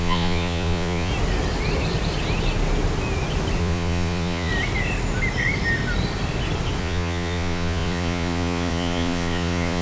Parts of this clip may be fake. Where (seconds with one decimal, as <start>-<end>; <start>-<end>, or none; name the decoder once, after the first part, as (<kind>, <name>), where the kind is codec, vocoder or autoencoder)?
0.0-1.1 (vocoder, Vocos); 3.6-4.5; 6.8-9.8